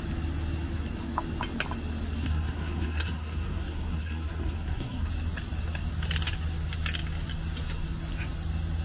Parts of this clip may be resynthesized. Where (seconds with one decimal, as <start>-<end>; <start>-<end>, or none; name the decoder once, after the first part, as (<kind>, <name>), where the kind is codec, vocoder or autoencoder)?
2.2-5.1 (codec, SNAC)